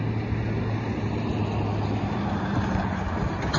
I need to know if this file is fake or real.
real